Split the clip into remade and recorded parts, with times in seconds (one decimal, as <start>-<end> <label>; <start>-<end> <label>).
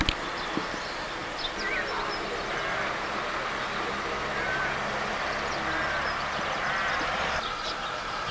0.0-8.3 recorded